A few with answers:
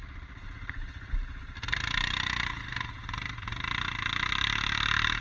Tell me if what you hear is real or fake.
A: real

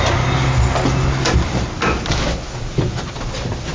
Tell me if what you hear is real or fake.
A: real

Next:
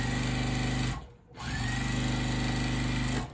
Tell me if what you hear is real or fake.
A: real